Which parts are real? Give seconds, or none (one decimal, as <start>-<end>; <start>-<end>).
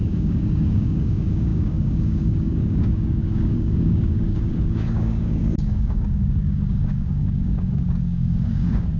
none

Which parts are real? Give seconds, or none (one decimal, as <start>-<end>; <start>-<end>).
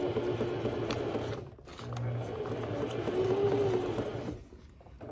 0.0-5.1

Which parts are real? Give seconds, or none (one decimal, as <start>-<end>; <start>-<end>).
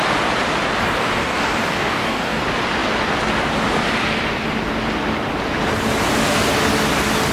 0.0-1.0; 2.4-7.3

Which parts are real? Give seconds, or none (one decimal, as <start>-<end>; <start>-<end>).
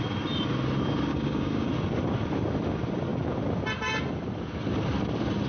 0.0-1.1; 1.7-5.5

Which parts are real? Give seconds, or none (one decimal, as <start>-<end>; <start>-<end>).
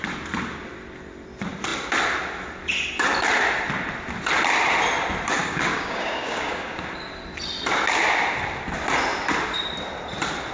0.0-5.4; 6.9-10.5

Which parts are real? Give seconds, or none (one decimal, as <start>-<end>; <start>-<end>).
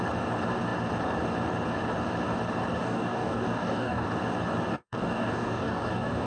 0.0-2.8; 4.1-4.7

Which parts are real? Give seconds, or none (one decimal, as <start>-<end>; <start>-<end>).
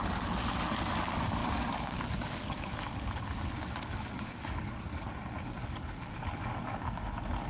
0.0-1.4; 5.1-5.6; 6.7-7.5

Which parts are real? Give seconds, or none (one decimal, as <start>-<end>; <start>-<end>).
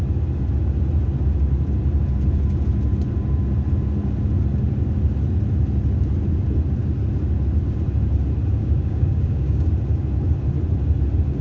0.0-8.6; 9.7-11.4